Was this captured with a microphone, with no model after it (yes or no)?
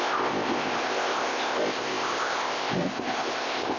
no